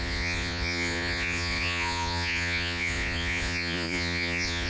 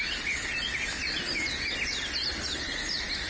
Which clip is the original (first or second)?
second